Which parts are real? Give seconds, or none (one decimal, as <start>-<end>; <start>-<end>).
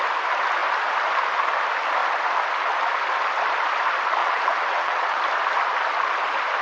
0.0-4.2; 5.2-6.6